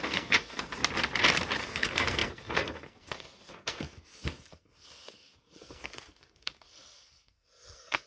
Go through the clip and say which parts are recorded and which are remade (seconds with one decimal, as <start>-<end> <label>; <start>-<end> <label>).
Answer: 0.0-0.8 remade; 0.8-1.6 recorded; 1.6-8.1 remade